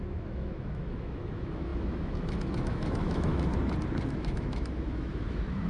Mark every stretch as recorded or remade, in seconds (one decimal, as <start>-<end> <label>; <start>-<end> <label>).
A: 0.0-3.5 remade; 3.5-4.1 recorded; 4.1-5.7 remade